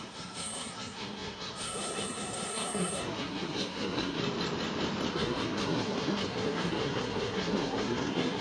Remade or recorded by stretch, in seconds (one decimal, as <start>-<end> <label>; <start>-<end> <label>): 0.0-4.2 remade; 4.2-5.1 recorded; 5.1-8.4 remade